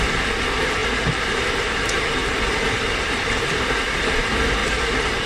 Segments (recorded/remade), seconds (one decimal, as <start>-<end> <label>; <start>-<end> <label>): 0.0-4.6 remade; 4.6-5.3 recorded